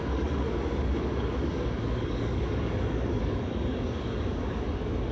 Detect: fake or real fake